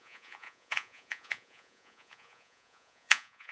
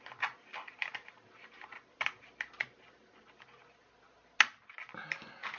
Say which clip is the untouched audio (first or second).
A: second